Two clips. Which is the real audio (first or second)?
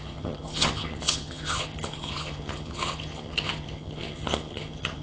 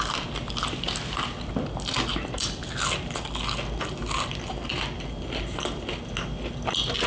second